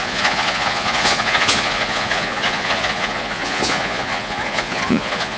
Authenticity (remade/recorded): remade